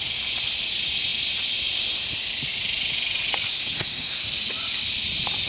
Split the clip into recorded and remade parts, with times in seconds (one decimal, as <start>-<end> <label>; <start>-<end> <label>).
0.0-3.5 recorded; 3.5-4.2 remade; 4.2-5.5 recorded